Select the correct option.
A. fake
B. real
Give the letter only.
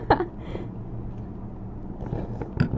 B